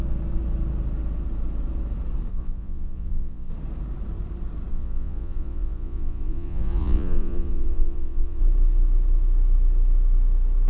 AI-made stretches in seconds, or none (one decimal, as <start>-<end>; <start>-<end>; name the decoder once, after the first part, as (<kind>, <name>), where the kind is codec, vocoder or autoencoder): 2.3-3.5 (vocoder, Vocos); 4.7-8.4